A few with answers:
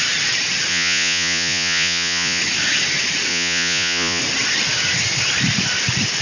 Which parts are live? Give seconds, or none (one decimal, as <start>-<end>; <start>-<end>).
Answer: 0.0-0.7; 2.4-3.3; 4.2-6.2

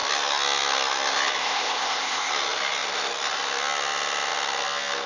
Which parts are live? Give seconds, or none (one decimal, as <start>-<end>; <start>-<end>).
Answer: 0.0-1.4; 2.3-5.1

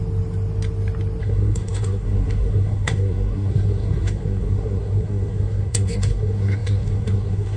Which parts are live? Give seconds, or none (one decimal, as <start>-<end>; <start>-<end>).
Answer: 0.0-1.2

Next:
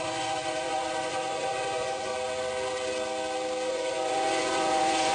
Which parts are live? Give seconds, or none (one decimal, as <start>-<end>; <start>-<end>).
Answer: 2.1-3.7

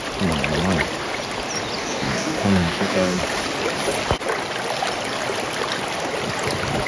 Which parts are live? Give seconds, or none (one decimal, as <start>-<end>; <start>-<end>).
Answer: 0.0-1.8; 3.2-6.9